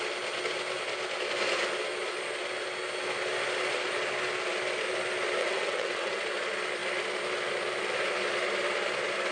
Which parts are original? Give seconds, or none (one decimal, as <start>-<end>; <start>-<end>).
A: 0.0-5.4; 6.2-9.3